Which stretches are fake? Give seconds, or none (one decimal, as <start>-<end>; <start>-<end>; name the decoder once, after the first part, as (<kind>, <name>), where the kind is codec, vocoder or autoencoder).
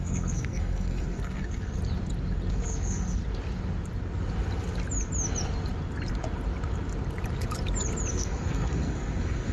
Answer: 0.0-1.8 (codec, SNAC); 2.5-3.2; 8.1-9.5